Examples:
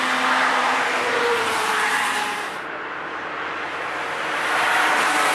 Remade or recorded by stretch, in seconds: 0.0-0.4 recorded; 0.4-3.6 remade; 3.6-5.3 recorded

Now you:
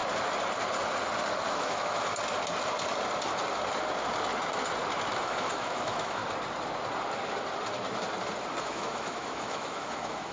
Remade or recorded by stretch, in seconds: 0.0-1.5 recorded; 1.5-2.1 remade; 2.1-5.2 recorded; 5.2-6.2 remade; 6.2-8.6 recorded; 8.6-10.3 remade